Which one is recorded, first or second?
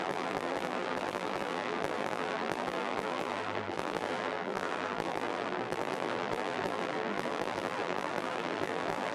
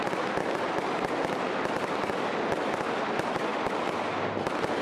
second